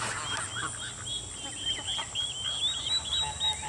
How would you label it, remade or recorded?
recorded